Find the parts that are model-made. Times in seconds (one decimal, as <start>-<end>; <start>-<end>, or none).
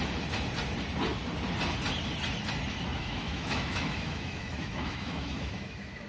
2.9-6.1